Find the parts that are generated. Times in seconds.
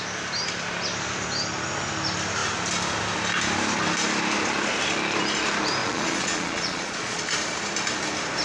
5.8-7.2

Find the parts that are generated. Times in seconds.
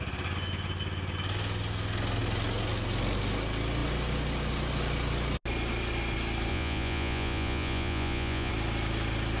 6.5-8.5